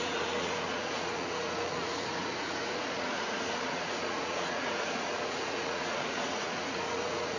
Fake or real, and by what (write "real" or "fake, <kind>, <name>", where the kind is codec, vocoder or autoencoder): fake, vocoder, Vocos